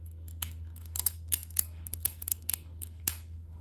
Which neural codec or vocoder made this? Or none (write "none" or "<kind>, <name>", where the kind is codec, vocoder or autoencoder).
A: codec, SNAC